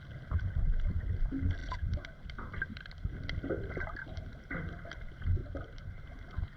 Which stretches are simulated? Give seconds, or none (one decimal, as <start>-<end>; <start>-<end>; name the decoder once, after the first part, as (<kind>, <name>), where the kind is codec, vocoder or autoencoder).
1.6-2.8 (vocoder, BigVGAN v2); 4.0-4.5; 5.4-6.1